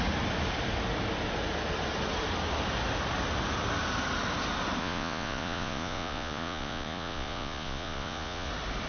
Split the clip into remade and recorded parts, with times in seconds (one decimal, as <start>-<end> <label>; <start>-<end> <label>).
0.0-4.8 recorded; 4.8-8.5 remade; 8.5-8.9 recorded